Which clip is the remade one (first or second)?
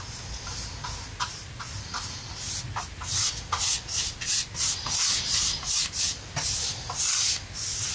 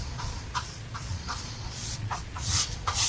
second